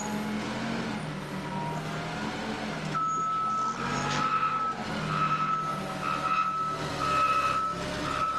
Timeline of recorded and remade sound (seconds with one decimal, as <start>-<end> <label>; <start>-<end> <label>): 0.0-8.4 recorded